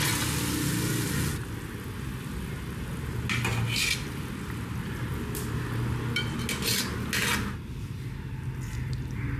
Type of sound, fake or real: real